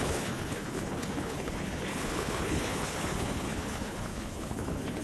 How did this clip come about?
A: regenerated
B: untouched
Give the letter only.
A